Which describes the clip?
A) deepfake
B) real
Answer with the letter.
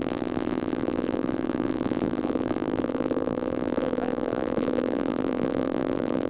A